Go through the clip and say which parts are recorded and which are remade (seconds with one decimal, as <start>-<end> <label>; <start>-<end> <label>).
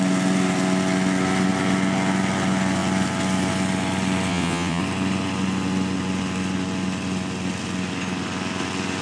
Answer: 0.0-4.3 recorded; 4.3-4.8 remade; 4.8-9.0 recorded